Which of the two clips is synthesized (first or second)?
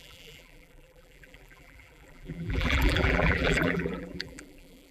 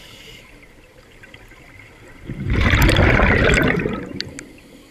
first